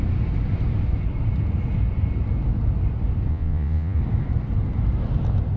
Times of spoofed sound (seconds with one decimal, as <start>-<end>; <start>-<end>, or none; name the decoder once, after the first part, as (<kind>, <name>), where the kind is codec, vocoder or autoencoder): 3.3-4.0 (vocoder, Vocos)